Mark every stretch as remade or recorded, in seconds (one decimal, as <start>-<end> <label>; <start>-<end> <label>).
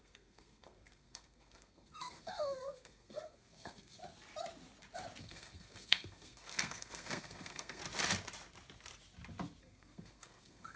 0.0-4.0 remade; 4.0-5.2 recorded; 5.2-7.8 remade; 7.8-9.6 recorded; 9.6-10.8 remade